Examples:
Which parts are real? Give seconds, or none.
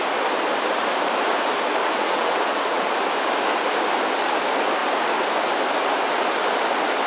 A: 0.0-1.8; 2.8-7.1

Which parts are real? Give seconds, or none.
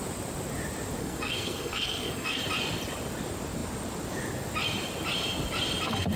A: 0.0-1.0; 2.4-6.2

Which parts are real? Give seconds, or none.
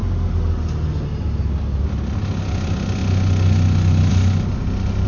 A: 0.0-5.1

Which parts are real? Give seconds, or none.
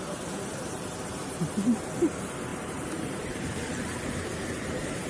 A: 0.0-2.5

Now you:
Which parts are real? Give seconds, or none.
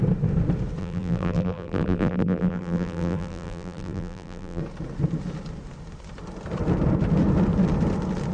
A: 0.0-0.8; 4.6-8.3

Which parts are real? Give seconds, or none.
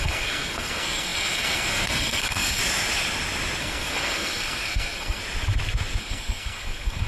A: 2.6-3.6; 5.2-6.0